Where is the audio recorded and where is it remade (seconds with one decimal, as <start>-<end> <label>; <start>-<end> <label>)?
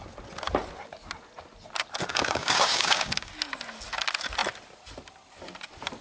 0.0-2.1 recorded; 2.1-3.3 remade; 3.3-6.0 recorded